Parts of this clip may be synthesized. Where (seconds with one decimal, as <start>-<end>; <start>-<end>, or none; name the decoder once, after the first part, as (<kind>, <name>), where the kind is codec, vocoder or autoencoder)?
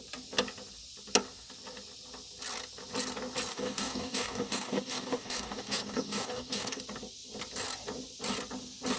3.5-6.8 (codec, DAC)